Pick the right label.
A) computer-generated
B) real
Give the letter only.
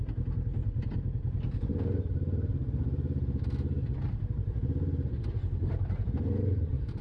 B